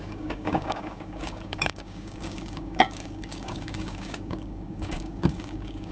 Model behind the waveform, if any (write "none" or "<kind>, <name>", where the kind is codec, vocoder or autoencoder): codec, DAC